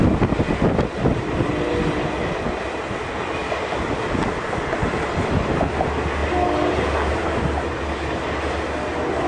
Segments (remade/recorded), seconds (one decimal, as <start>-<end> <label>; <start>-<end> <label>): 0.0-1.5 remade; 1.5-3.4 recorded; 3.4-5.3 remade; 5.3-9.3 recorded